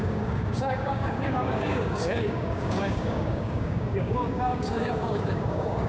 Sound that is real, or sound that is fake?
fake